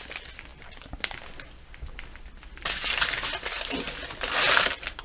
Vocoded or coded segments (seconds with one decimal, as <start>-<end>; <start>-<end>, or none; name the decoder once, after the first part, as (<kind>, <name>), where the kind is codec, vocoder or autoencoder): none